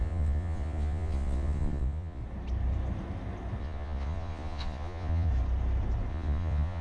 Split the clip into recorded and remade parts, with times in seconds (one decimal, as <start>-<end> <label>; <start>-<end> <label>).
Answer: 0.0-2.2 remade; 2.2-3.6 recorded; 3.6-5.3 remade; 5.3-6.1 recorded; 6.1-6.8 remade